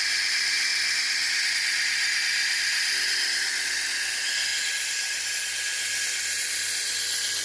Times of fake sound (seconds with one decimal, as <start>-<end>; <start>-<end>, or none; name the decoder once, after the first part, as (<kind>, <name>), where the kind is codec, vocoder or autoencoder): none